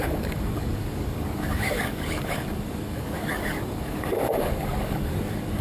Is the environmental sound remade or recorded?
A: remade